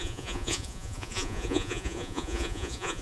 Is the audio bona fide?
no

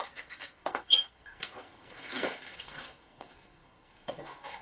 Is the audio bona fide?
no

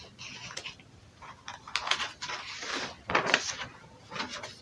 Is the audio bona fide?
yes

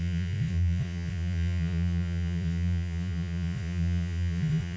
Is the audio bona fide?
no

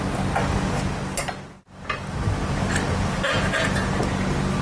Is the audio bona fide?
yes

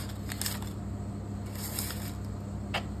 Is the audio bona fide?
yes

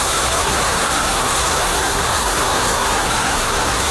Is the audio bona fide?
no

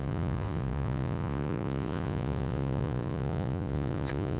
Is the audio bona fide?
no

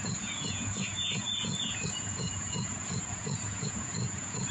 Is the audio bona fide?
no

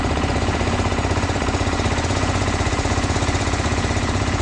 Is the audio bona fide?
no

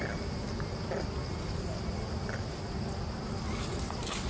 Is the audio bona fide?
yes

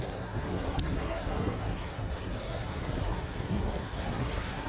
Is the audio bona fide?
no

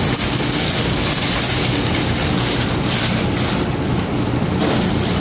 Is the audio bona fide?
yes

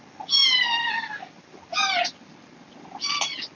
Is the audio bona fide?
yes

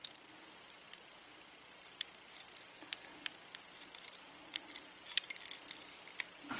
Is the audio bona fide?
yes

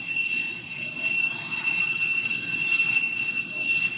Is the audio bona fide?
no